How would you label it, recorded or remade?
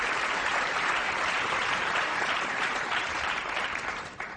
remade